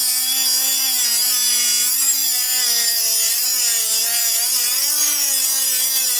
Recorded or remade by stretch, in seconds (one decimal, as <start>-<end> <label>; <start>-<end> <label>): 0.0-6.2 recorded